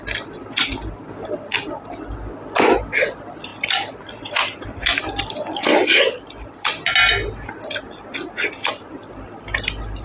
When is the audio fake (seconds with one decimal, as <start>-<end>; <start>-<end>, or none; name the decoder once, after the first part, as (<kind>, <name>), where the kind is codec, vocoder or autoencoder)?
3.5-4.3 (vocoder, BigVGAN v2); 5.7-6.7